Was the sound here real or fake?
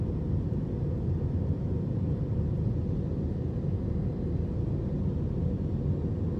real